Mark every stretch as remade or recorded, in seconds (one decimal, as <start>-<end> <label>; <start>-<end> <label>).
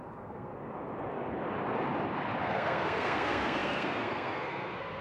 0.0-0.5 remade; 0.5-2.4 recorded; 2.4-5.0 remade